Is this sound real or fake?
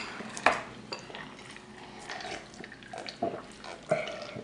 real